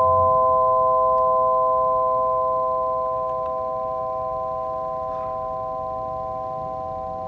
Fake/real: real